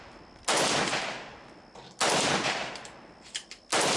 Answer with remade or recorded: recorded